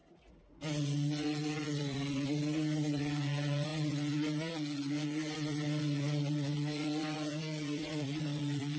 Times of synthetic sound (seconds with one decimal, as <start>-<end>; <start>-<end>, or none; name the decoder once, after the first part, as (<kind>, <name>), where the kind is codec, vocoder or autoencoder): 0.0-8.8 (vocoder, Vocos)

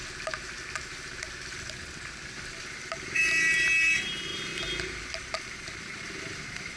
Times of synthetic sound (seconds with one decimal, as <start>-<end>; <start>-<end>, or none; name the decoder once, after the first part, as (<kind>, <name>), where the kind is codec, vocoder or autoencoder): none

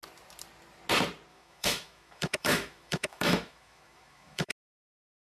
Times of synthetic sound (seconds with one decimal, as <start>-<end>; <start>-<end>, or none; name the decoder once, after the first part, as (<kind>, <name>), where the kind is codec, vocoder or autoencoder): 1.3-4.5 (autoencoder, DAC-VAE)

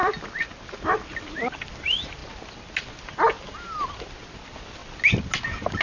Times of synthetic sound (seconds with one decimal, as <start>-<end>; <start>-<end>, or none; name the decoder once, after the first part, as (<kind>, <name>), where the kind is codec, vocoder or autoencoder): none

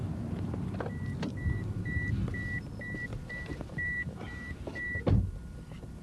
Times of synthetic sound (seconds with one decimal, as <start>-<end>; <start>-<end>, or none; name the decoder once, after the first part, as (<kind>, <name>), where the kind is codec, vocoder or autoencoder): none

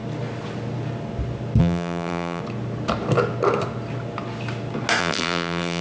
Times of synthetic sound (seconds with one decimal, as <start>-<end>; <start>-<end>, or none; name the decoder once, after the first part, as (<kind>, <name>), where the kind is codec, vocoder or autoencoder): 1.6-2.4 (vocoder, BigVGAN v2); 5.0-5.8

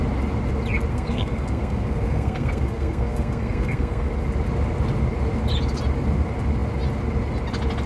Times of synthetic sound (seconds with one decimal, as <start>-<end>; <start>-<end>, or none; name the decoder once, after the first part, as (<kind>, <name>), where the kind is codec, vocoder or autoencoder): 0.9-4.1 (codec, SNAC)

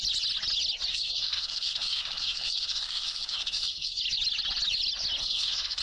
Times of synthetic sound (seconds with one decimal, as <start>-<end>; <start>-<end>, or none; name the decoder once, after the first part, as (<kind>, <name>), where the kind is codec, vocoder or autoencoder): 0.9-4.0 (codec, SNAC); 5.2-5.8